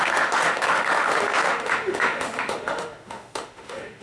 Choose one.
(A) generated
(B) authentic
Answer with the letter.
A